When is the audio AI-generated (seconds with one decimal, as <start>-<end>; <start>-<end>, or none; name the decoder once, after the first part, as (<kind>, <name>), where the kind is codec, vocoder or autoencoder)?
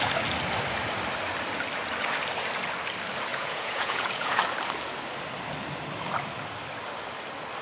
3.3-4.4 (vocoder, Vocos)